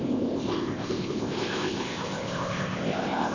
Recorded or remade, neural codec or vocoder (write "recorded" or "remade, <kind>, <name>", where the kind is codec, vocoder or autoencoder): remade, codec, ZipCodec